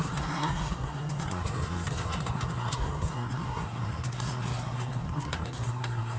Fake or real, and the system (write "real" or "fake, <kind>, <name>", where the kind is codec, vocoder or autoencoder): fake, codec, SNAC